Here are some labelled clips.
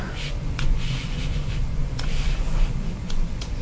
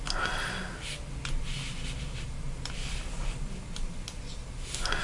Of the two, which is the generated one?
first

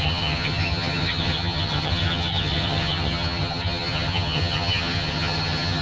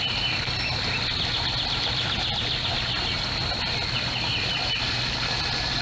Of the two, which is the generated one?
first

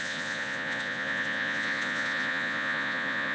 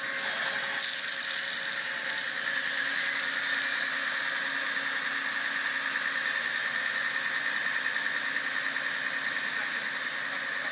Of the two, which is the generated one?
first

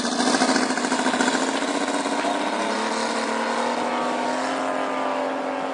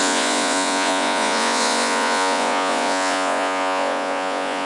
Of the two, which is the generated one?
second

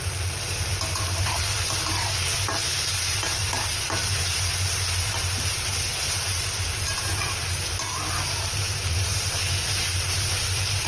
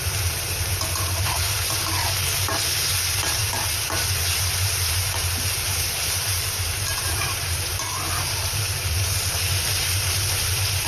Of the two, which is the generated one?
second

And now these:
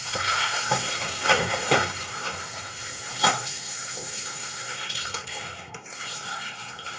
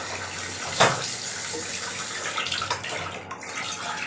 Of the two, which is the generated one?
first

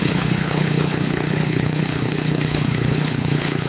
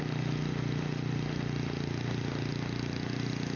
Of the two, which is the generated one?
first